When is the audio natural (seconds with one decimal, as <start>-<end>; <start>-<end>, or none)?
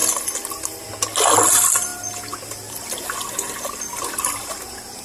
0.0-5.0